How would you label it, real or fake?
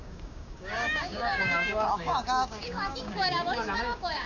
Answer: fake